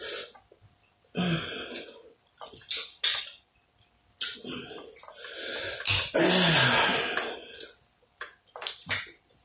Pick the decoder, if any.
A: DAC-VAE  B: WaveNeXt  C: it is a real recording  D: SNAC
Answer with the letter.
C